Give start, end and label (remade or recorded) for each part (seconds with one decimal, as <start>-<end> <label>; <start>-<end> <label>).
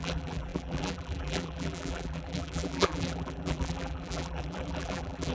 0.0-5.3 remade